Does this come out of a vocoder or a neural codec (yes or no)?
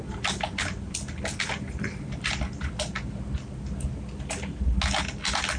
no